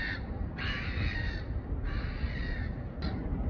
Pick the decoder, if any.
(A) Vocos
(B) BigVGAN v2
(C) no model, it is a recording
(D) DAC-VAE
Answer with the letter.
C